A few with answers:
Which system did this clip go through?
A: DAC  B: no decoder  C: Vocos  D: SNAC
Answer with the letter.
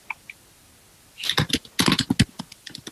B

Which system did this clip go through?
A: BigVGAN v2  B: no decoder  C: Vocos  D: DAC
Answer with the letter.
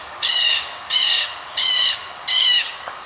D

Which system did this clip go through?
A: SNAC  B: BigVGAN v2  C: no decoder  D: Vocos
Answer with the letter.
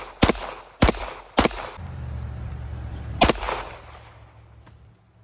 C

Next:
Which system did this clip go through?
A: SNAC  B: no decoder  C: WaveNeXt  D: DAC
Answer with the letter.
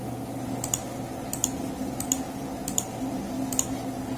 B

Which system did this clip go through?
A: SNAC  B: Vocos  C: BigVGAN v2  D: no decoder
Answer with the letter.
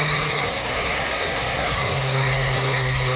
A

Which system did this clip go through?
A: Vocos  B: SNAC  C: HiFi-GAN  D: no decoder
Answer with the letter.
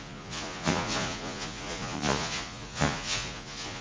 A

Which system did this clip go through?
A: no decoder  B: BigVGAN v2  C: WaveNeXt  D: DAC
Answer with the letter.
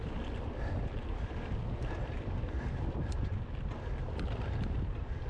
A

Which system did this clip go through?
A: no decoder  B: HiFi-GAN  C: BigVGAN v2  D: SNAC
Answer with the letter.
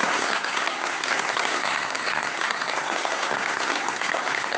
D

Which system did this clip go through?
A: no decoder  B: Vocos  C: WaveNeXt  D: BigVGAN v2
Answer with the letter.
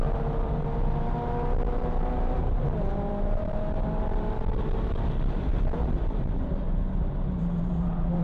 D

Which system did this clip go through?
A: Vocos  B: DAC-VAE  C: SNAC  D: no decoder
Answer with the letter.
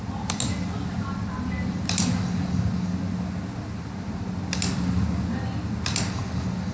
D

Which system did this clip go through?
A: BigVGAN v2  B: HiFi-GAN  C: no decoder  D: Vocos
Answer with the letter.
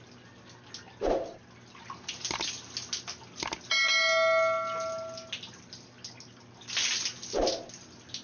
C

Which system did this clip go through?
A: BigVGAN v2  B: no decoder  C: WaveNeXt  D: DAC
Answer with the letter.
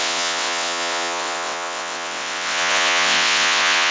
C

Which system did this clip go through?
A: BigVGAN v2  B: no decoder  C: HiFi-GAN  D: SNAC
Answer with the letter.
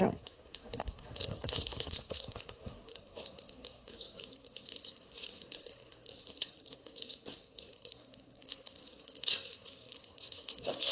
D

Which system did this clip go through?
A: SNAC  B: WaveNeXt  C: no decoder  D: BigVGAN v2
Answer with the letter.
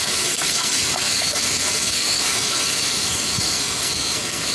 A